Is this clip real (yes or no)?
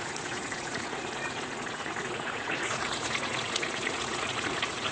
no